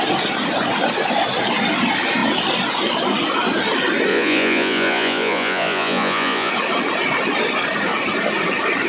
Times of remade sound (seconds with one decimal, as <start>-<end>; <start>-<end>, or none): 4.1-6.5